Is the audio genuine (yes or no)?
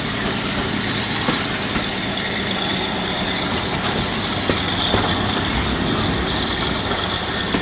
yes